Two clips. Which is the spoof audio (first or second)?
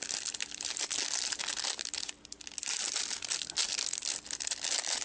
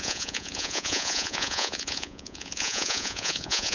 second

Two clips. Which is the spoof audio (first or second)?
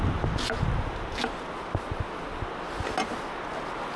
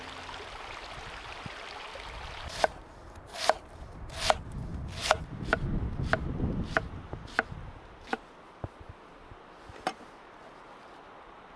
second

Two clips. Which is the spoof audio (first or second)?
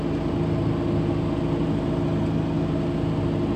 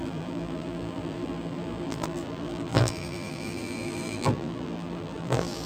second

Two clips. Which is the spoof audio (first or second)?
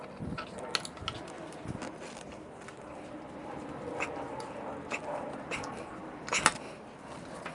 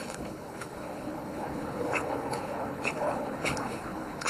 second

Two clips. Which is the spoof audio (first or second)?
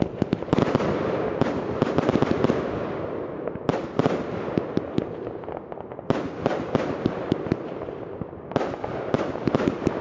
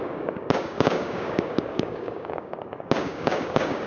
second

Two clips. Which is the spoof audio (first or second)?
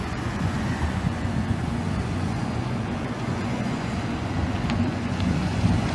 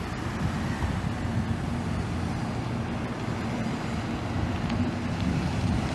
first